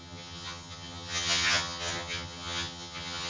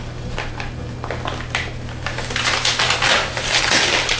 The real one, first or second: second